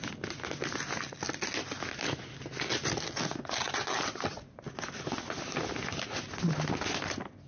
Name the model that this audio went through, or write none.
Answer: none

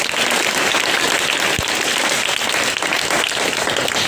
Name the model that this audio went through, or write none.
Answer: none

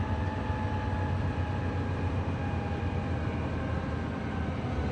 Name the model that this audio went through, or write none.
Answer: none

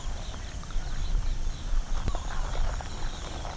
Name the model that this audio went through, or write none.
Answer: none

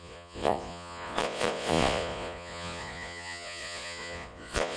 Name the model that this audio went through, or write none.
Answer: vocoder, Vocos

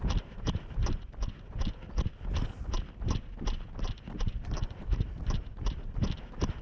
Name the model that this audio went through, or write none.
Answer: none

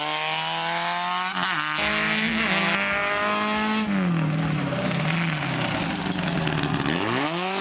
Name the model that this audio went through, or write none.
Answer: none